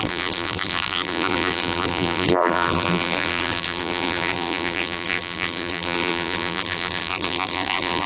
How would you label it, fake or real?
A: fake